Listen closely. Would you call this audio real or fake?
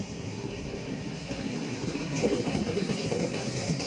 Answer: fake